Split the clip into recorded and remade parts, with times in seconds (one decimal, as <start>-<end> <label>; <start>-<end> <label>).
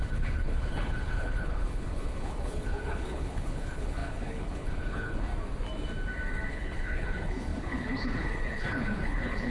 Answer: 0.0-5.3 remade; 5.3-6.5 recorded; 6.5-9.5 remade